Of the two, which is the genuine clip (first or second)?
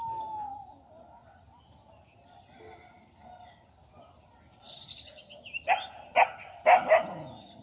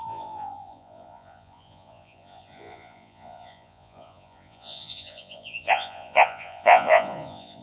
first